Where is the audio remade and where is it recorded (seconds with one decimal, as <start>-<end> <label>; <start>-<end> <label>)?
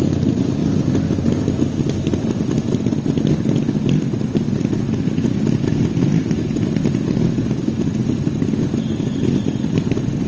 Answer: 0.0-10.3 recorded